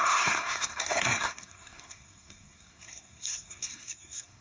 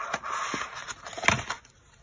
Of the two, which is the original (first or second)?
second